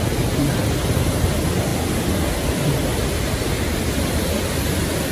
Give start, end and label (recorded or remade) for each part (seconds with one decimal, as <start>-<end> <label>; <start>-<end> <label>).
0.0-5.1 recorded